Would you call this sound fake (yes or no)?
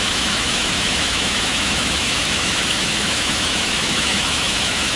yes